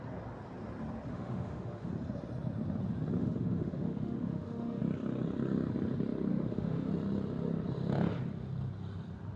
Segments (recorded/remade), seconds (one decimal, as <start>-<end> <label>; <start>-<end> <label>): 0.0-1.1 recorded; 1.1-1.9 remade; 1.9-3.2 recorded; 3.2-4.8 remade; 4.8-6.3 recorded; 6.3-6.9 remade; 6.9-9.4 recorded